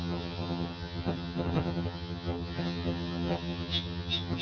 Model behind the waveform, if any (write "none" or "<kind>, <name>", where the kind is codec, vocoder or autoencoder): vocoder, HiFi-GAN